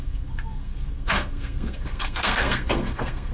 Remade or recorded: remade